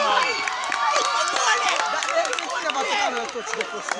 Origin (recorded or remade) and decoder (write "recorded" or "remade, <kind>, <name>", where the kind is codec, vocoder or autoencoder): remade, vocoder, BigVGAN v2